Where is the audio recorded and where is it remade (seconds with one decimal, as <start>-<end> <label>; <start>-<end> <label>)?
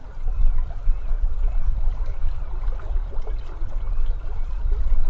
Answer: 0.0-5.1 recorded